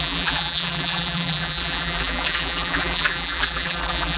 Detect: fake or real fake